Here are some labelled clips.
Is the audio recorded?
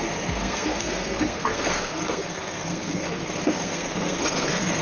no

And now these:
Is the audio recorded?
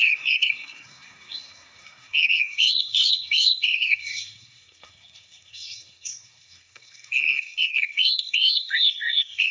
no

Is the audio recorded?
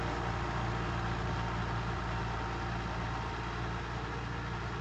yes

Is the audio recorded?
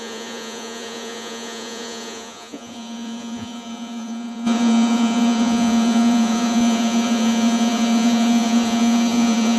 no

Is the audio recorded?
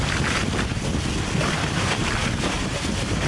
yes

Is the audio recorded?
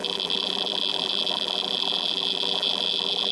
no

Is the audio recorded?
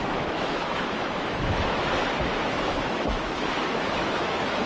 no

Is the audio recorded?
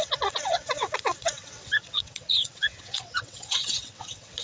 no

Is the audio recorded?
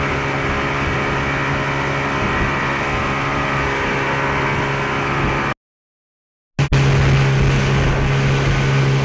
yes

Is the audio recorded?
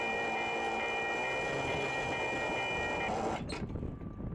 yes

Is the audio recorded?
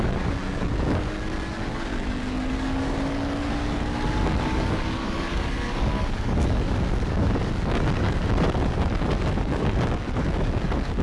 no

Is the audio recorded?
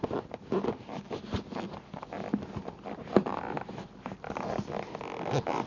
yes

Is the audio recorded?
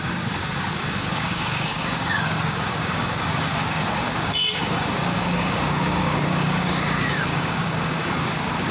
no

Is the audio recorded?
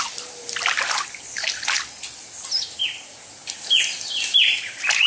yes